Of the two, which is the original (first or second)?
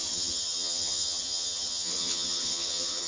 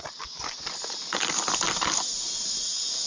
second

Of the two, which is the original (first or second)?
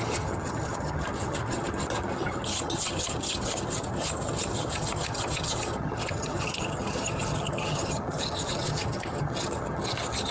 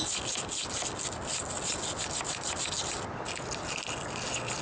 second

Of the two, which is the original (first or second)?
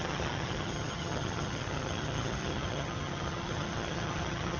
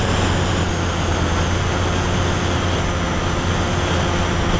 second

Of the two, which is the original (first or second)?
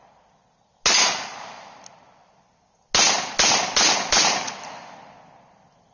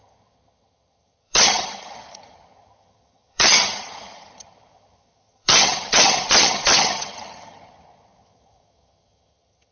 first